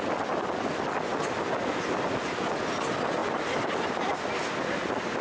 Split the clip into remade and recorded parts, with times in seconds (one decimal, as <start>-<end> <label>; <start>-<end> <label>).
0.0-5.2 recorded